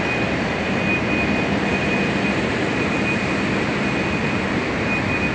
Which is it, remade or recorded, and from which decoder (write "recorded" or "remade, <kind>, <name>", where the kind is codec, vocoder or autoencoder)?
recorded